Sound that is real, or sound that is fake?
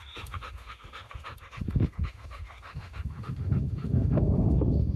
fake